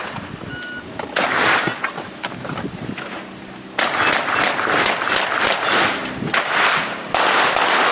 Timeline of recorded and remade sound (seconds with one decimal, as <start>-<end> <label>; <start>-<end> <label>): 0.0-7.9 recorded